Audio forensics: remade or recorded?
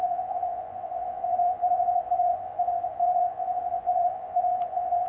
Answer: remade